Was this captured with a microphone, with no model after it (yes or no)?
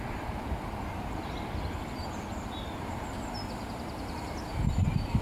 yes